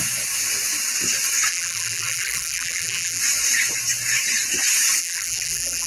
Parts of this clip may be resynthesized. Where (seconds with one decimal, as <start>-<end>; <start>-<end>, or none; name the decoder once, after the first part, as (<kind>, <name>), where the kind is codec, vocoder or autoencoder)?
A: 1.5-3.2 (vocoder, BigVGAN v2); 5.0-5.9